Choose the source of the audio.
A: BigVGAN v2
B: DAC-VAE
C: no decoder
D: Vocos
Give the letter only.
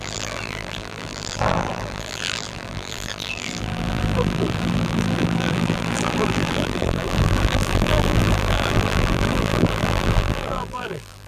A